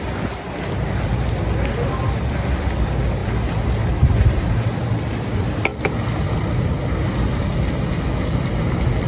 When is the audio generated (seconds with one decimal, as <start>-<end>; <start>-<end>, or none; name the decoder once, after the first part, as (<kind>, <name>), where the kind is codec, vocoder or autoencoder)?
none